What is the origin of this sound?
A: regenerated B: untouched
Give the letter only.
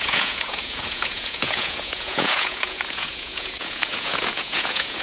A